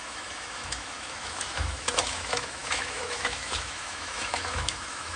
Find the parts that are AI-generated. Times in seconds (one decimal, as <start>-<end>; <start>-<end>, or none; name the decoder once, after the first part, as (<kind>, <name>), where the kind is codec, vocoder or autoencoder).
0.0-5.2 (autoencoder, DAC-VAE)